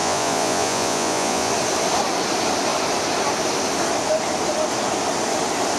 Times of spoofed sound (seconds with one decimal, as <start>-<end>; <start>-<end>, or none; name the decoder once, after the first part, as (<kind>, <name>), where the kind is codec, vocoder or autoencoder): 0.0-1.5 (vocoder, Vocos)

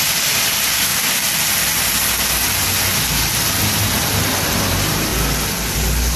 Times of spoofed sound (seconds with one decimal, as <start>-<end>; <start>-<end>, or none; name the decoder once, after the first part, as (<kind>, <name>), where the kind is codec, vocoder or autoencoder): 0.0-0.9 (vocoder, BigVGAN v2); 4.6-5.1

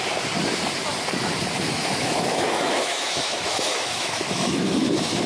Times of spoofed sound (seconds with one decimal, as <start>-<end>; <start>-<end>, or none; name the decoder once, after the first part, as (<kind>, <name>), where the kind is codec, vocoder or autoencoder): 1.7-5.3 (autoencoder, DAC-VAE)

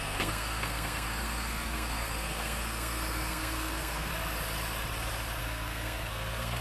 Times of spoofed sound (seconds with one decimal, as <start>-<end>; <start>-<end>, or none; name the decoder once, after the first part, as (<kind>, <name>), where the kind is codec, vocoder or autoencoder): 0.0-4.1 (codec, SNAC); 5.4-6.6

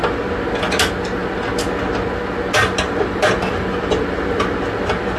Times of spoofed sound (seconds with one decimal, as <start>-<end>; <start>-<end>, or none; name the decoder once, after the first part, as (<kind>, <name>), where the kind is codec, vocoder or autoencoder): none

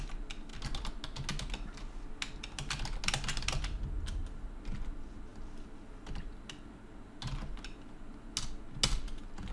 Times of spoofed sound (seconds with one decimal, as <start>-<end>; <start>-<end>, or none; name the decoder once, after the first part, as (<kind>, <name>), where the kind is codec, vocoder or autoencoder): none

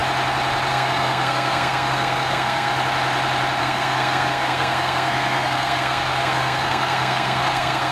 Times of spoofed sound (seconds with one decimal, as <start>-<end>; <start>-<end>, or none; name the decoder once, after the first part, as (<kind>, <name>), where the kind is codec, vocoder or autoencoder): 0.7-2.7 (codec, SNAC); 3.6-7.9

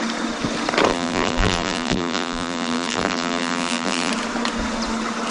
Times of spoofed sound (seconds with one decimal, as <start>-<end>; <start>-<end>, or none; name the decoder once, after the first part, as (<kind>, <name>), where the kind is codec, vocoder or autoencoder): 0.9-4.1 (vocoder, BigVGAN v2)